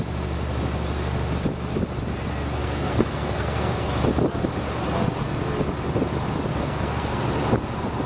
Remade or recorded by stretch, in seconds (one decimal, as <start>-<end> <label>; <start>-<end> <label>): 0.0-2.6 recorded; 2.6-3.9 remade; 3.9-6.5 recorded; 6.5-7.2 remade; 7.2-8.1 recorded